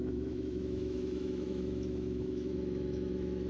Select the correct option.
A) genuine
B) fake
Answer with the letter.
B